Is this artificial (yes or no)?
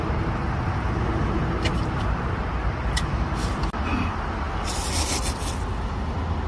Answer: no